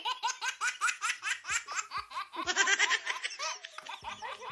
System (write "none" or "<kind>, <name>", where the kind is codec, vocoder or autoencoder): none